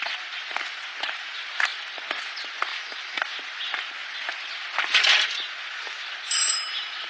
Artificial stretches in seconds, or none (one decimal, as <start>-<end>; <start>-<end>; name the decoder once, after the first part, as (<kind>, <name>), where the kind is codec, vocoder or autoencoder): 2.7-3.2 (autoencoder, DAC-VAE)